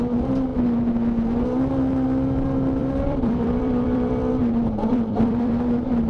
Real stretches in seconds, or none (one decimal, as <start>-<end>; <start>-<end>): 0.0-2.8; 4.3-4.9; 5.5-6.1